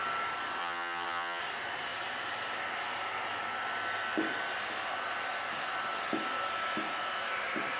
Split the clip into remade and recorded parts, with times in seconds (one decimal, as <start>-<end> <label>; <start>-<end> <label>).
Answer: 0.0-0.6 recorded; 0.6-1.4 remade; 1.4-7.8 recorded